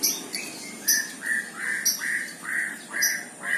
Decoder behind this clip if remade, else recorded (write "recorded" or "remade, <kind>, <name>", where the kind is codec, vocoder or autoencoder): recorded